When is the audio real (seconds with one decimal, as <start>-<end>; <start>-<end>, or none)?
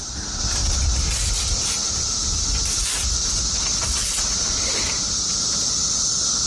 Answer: 0.0-0.6; 3.1-3.7; 4.7-6.5